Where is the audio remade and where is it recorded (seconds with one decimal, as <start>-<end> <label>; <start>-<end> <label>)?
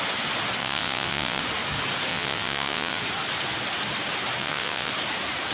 0.0-0.6 recorded; 0.6-1.4 remade; 1.4-2.1 recorded; 2.1-3.0 remade; 3.0-4.4 recorded; 4.4-4.9 remade; 4.9-5.5 recorded